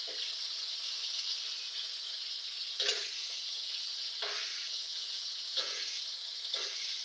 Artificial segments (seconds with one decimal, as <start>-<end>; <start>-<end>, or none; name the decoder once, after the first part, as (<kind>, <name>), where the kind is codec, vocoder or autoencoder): 1.6-2.1 (vocoder, Vocos); 3.2-4.1; 4.5-6.0